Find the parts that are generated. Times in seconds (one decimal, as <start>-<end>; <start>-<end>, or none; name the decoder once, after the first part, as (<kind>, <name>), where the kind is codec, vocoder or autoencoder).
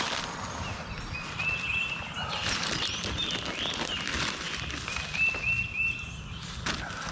none